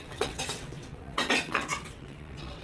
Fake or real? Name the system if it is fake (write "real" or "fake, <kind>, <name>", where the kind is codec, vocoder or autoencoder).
fake, vocoder, WaveNeXt